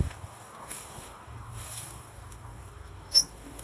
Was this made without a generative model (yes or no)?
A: no